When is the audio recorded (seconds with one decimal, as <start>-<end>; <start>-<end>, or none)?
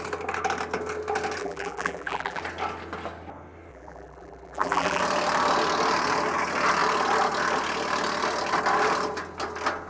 0.0-1.4; 2.4-3.7; 5.0-9.9